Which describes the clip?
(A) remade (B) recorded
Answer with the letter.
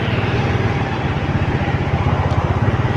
A